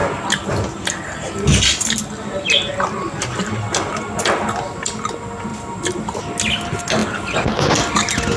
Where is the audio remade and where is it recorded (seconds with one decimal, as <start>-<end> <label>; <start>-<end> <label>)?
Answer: 0.0-4.2 remade; 4.2-5.5 recorded; 5.5-6.2 remade; 6.2-8.4 recorded